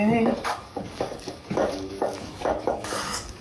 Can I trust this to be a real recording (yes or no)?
no